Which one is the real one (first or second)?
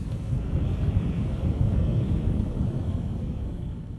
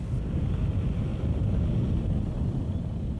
second